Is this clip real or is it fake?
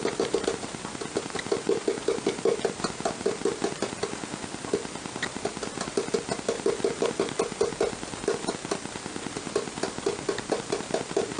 real